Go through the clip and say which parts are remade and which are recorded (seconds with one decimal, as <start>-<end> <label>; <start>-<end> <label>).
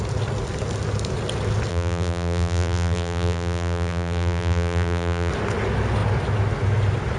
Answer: 0.0-1.7 recorded; 1.7-5.3 remade; 5.3-7.2 recorded